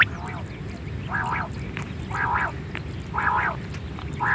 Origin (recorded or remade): recorded